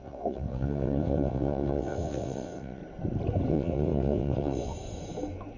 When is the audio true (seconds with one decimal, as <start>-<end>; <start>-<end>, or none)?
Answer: 2.8-3.5; 4.7-5.6